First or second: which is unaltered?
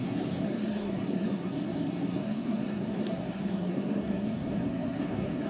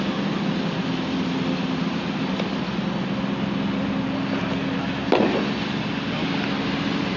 second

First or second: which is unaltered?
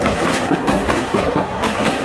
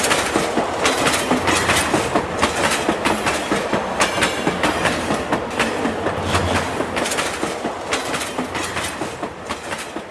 second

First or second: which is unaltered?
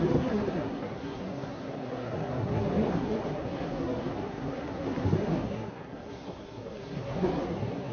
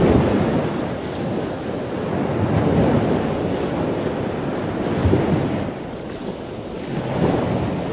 second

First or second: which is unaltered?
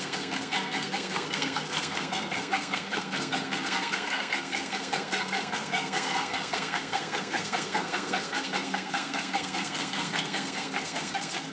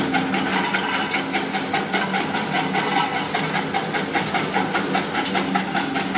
second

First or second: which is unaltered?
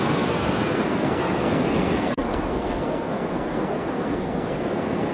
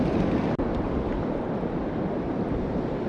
second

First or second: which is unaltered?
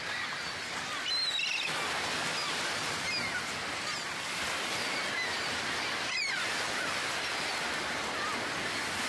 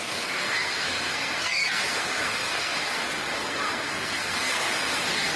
first